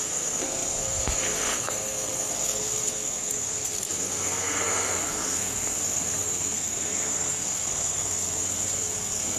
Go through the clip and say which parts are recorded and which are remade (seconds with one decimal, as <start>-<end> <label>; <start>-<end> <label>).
0.0-9.4 remade